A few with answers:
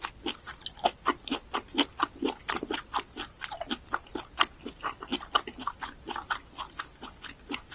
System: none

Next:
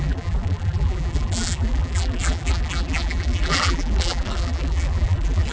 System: vocoder, BigVGAN v2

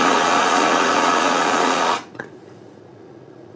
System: vocoder, Vocos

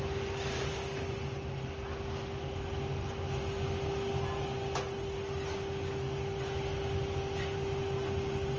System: none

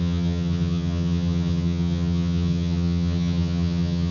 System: vocoder, HiFi-GAN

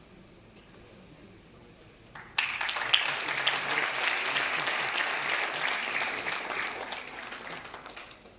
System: none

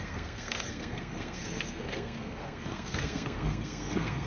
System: codec, SNAC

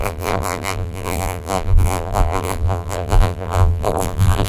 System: vocoder, BigVGAN v2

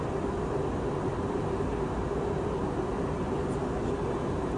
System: none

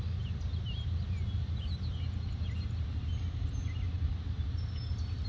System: none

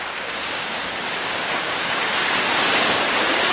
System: codec, DAC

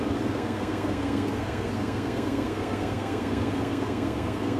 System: codec, SNAC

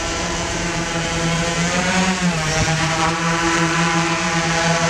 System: vocoder, BigVGAN v2